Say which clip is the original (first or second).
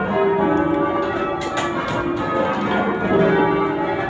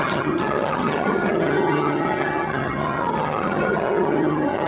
first